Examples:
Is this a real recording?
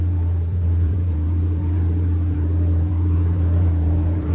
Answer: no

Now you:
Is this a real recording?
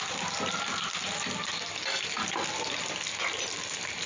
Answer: yes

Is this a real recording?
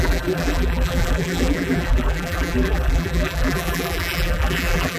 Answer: no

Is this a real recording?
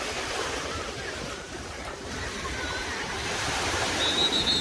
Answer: no